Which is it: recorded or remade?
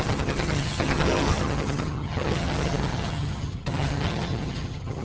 remade